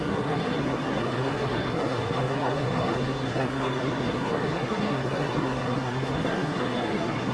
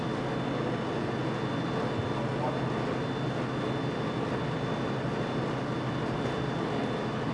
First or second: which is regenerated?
first